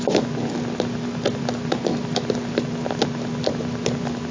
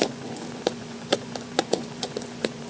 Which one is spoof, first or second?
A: second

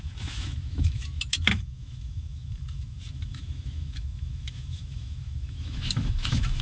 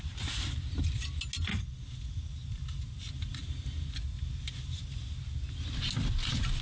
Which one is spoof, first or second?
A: first